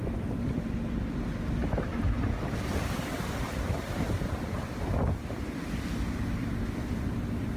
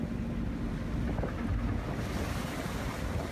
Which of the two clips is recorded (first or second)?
second